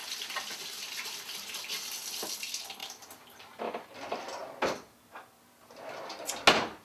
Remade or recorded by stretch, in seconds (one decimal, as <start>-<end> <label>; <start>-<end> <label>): 0.0-2.8 recorded; 2.8-3.6 remade; 3.6-6.8 recorded